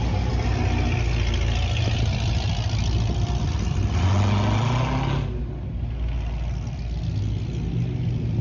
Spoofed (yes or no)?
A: no